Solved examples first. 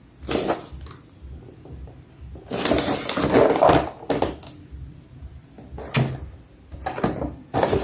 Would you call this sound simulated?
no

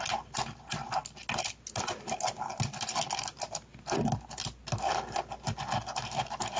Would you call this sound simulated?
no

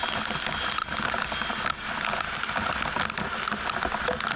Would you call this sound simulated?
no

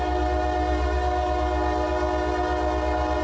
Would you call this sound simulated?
no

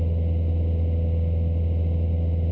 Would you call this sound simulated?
no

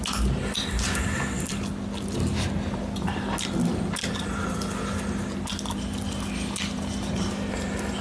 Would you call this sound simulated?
no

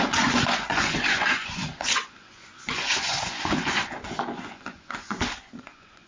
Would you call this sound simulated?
yes